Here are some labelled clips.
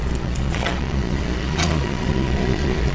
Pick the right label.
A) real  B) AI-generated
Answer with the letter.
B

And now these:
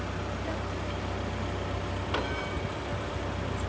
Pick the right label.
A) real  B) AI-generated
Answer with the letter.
A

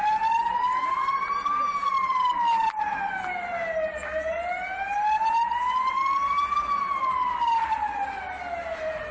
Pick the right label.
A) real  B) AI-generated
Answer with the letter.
A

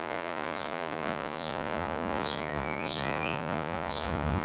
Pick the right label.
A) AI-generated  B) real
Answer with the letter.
A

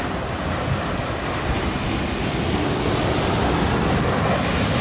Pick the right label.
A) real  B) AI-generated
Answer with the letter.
A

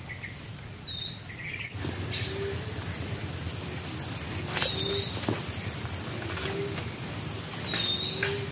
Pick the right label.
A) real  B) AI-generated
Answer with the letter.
A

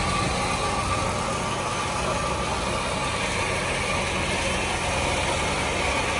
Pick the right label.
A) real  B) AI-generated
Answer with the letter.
A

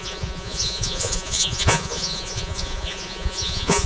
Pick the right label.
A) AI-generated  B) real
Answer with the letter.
A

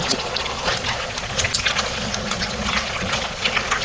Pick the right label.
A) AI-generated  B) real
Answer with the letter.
A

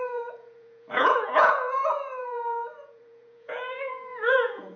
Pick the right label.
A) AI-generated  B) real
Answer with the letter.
A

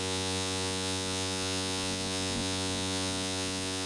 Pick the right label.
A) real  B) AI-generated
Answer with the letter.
B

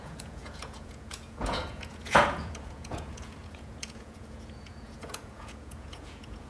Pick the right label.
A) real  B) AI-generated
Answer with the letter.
B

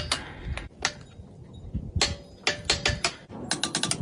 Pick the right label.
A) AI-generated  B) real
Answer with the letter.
B